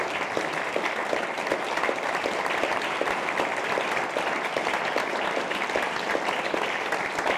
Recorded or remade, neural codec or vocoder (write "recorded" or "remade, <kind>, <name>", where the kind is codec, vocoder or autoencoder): recorded